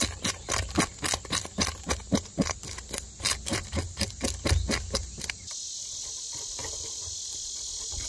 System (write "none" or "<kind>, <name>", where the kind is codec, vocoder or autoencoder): none